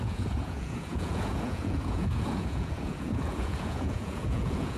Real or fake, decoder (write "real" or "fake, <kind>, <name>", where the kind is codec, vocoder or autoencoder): fake, vocoder, Vocos